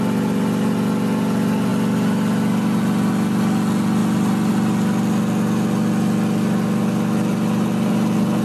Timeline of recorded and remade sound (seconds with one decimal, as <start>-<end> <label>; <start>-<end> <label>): 0.0-8.4 recorded